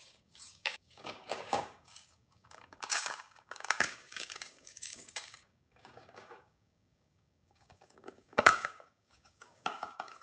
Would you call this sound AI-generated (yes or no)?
yes